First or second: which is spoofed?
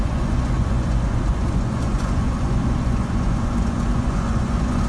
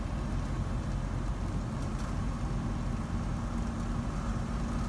first